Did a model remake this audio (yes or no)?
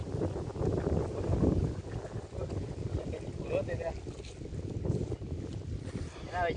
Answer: no